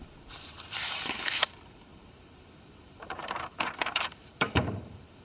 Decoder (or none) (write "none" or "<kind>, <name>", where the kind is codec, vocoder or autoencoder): vocoder, BigVGAN v2